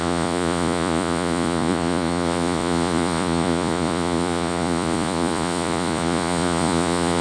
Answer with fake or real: fake